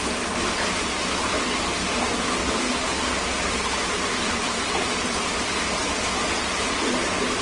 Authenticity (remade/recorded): recorded